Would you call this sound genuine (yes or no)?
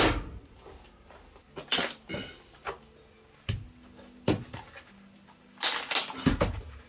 yes